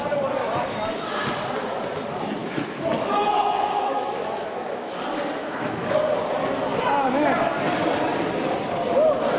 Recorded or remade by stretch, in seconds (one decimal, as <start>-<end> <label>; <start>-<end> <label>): 0.0-2.4 recorded; 2.4-5.0 remade; 5.0-5.4 recorded; 5.4-6.0 remade; 6.0-9.4 recorded